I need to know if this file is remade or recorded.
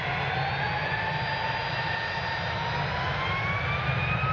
recorded